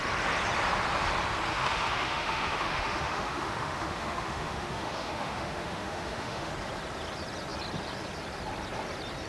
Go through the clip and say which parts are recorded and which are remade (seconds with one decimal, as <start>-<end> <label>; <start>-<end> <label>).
0.0-1.5 recorded; 1.5-6.5 remade; 6.5-9.3 recorded